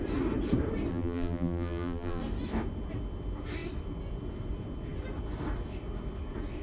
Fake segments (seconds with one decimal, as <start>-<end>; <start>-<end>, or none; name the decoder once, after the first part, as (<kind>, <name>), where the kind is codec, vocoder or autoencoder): 0.9-2.2 (vocoder, BigVGAN v2)